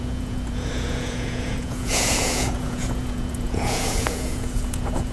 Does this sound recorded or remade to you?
remade